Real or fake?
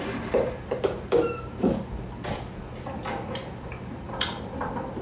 fake